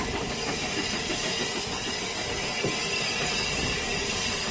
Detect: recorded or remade recorded